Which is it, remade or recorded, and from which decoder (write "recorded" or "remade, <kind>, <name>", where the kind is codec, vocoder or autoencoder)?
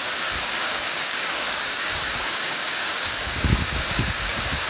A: remade, codec, DAC